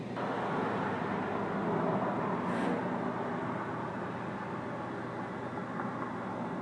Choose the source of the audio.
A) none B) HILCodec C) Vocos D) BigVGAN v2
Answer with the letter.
A